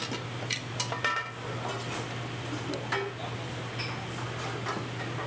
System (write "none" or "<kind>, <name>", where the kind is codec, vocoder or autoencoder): none